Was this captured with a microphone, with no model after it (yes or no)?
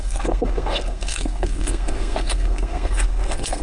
no